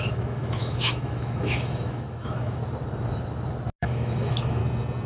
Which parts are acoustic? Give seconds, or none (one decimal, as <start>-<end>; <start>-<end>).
2.6-3.8; 4.6-5.1